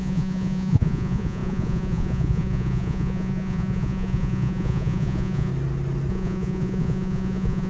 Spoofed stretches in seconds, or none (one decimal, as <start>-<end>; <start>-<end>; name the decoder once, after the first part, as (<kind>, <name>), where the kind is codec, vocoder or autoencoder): 0.0-5.5 (vocoder, Vocos); 6.1-7.7